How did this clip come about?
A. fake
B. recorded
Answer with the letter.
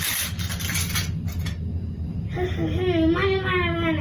B